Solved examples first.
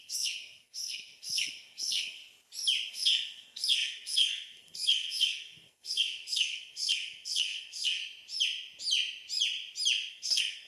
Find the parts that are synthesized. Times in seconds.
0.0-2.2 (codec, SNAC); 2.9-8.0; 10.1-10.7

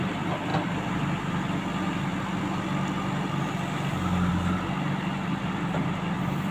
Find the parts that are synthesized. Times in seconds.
none

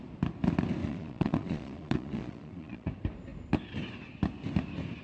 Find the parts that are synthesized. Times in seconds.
0.8-2.9 (vocoder, Vocos)

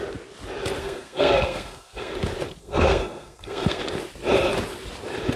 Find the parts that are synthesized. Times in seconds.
0.8-2.1 (codec, SNAC); 2.6-3.8

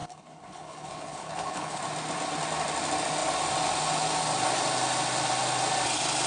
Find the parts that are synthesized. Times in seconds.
0.0-1.8 (codec, HILCodec)

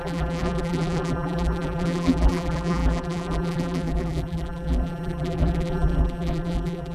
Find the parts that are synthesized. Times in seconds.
0.0-6.9 (vocoder, BigVGAN v2)

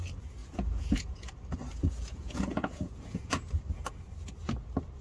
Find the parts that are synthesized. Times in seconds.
0.4-1.3 (vocoder, Vocos); 1.8-3.5